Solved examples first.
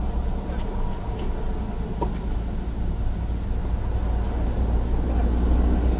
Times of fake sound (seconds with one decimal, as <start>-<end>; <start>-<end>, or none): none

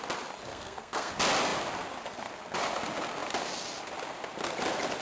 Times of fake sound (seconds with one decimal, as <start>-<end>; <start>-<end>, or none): 0.5-1.1

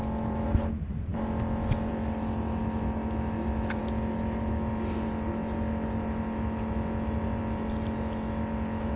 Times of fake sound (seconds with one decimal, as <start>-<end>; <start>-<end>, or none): none

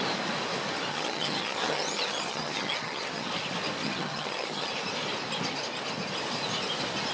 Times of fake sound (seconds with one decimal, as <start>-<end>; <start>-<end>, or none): 0.9-3.3; 3.8-4.7

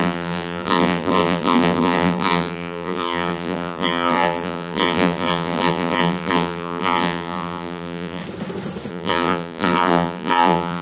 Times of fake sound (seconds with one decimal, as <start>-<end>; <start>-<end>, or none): 0.0-8.2; 8.9-10.8

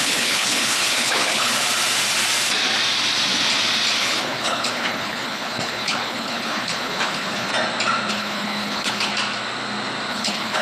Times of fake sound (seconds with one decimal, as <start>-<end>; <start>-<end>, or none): 0.0-1.5; 4.0-7.5; 8.1-9.1; 10.1-10.6